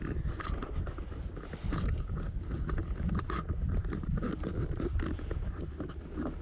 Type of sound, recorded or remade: remade